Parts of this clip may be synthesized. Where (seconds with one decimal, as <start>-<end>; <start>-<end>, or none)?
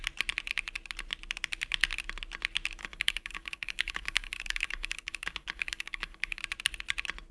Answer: 2.8-6.4